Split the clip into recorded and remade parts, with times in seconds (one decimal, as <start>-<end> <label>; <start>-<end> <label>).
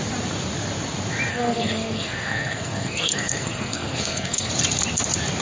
0.0-1.3 recorded; 1.3-4.5 remade; 4.5-5.4 recorded